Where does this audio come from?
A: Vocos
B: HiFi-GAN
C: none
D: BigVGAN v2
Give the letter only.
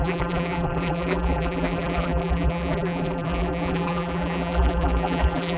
D